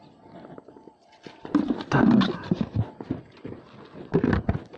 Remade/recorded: recorded